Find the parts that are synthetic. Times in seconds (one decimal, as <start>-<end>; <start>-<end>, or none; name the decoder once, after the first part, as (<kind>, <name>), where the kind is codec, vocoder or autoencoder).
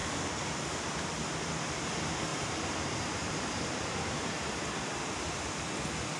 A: 2.3-4.8 (vocoder, BigVGAN v2)